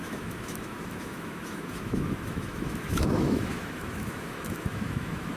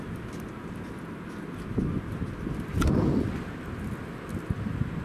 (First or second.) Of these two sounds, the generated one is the first